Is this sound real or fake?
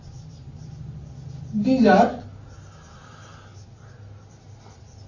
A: real